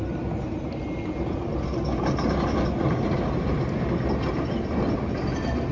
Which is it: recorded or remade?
recorded